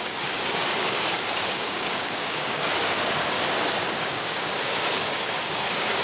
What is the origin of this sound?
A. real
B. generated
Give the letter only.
B